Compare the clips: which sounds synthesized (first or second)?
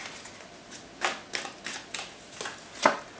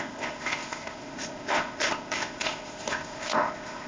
second